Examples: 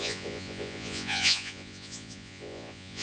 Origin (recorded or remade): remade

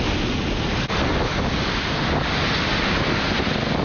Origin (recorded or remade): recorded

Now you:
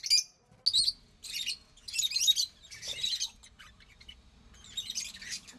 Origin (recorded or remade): recorded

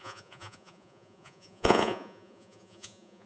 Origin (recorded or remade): remade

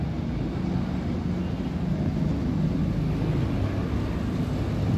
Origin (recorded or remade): recorded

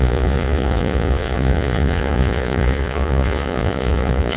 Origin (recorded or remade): remade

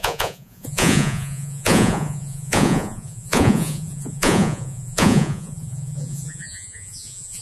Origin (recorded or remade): remade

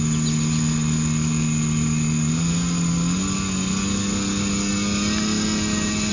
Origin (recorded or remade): recorded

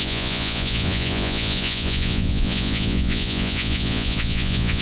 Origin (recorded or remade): remade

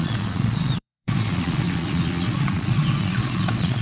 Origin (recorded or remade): remade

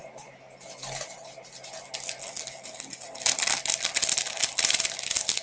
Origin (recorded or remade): recorded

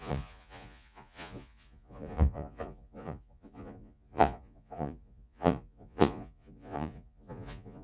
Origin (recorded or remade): remade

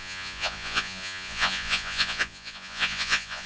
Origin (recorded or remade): remade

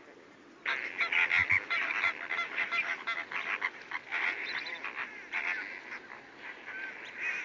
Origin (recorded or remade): recorded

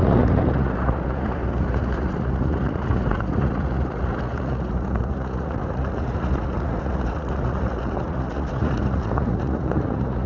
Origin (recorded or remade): remade